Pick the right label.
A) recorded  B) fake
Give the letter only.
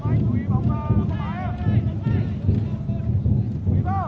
A